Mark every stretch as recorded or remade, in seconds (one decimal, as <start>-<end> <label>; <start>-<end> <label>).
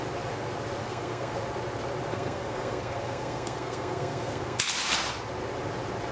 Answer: 0.0-0.8 recorded; 0.8-1.4 remade; 1.4-2.1 recorded; 2.1-4.6 remade; 4.6-6.1 recorded